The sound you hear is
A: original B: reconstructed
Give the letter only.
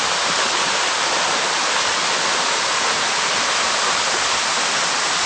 A